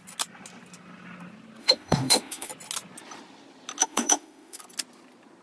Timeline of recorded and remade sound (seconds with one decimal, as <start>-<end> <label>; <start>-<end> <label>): 0.0-1.6 recorded; 1.6-2.5 remade; 2.5-3.8 recorded; 3.8-4.6 remade; 4.6-5.4 recorded